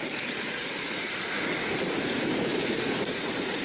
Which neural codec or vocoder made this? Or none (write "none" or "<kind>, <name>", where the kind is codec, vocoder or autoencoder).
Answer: vocoder, Vocos